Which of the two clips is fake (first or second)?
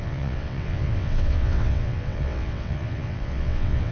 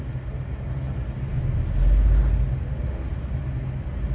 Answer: first